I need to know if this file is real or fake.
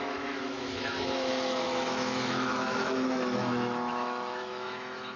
fake